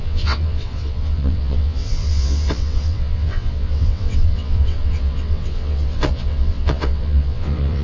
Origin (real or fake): fake